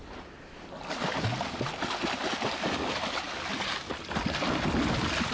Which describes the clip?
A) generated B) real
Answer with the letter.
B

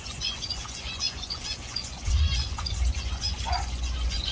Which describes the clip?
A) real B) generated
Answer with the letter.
B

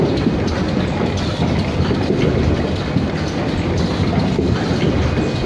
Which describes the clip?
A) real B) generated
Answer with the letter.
A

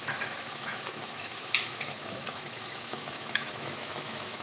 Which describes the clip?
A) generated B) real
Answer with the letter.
A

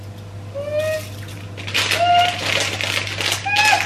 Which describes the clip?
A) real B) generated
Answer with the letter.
A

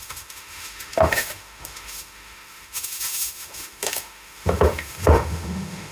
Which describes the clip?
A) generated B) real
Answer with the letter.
A